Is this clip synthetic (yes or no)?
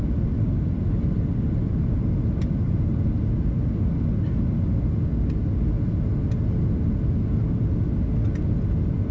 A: no